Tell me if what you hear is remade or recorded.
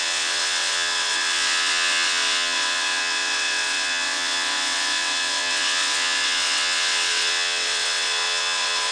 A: remade